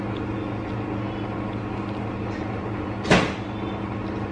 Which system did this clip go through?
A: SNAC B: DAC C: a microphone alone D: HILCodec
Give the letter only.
C